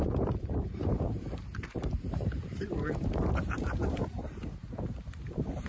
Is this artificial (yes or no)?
yes